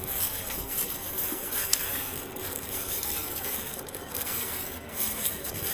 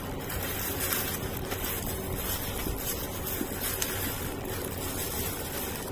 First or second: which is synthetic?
first